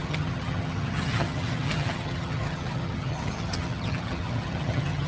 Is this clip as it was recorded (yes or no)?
no